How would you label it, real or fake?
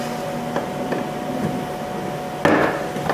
real